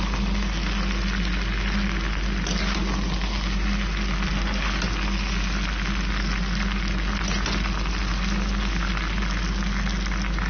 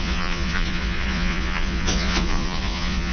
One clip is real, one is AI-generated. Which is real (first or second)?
first